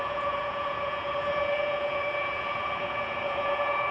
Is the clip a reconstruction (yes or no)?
yes